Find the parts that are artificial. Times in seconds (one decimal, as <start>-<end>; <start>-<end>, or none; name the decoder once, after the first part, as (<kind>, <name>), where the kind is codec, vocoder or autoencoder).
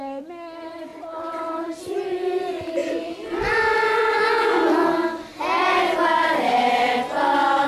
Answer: 0.9-1.9 (vocoder, BigVGAN v2); 2.8-4.2